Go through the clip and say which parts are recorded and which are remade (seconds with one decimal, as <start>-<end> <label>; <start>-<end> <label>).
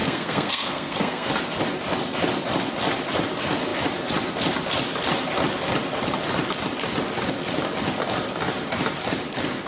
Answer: 0.0-1.3 remade; 1.3-9.7 recorded